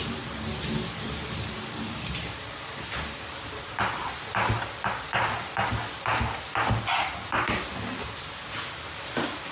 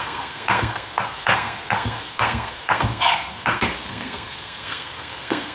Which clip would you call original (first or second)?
first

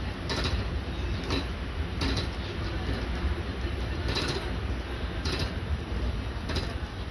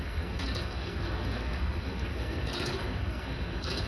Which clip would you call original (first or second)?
first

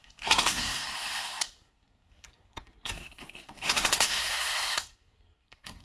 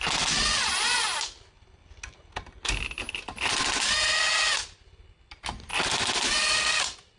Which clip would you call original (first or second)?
second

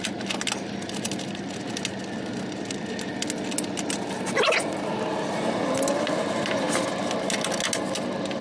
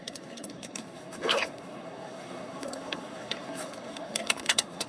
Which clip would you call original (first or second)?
first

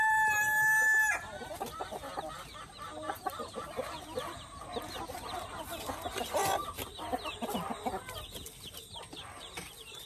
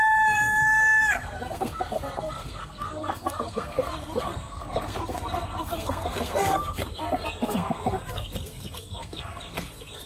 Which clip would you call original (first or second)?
first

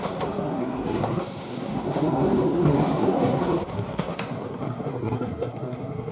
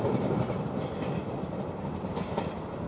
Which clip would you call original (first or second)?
second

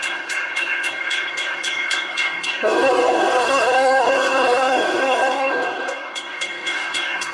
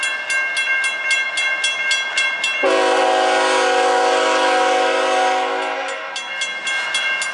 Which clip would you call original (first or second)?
second